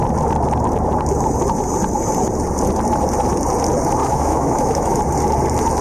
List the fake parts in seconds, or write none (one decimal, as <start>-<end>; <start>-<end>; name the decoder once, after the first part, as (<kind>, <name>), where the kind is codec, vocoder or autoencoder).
4.0-5.0 (autoencoder, DAC-VAE)